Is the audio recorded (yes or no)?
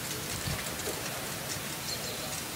yes